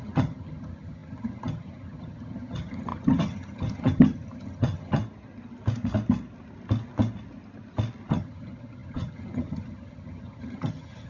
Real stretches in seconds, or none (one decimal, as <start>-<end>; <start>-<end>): 5.0-8.1